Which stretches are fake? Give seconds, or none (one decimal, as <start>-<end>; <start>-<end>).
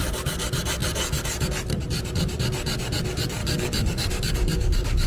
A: 3.4-5.1